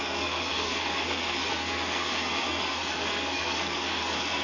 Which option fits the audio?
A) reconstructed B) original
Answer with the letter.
A